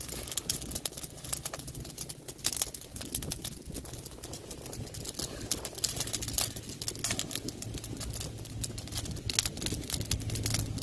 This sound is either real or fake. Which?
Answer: real